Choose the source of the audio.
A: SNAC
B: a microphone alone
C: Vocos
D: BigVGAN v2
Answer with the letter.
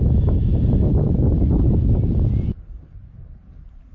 D